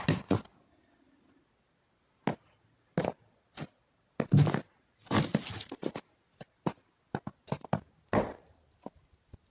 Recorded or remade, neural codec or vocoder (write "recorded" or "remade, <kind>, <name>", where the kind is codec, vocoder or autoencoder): recorded